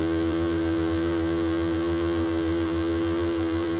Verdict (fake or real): fake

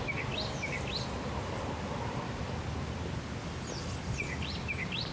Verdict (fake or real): real